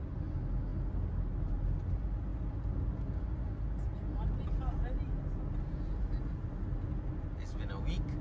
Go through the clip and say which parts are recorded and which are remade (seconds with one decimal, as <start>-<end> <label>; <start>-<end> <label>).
0.0-8.2 recorded